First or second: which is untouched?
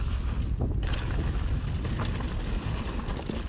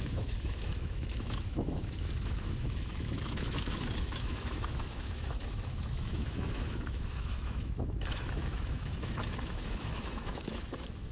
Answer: first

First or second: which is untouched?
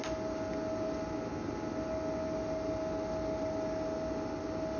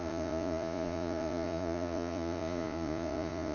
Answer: first